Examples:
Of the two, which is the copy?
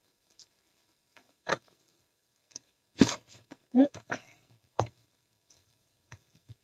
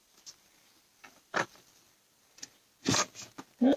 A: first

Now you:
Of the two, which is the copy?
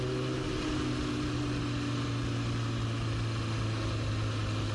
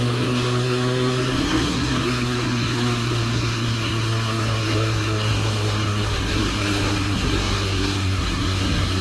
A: second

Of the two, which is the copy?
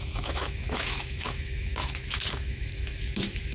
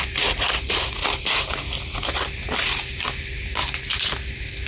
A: first